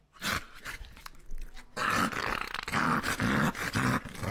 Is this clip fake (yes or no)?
no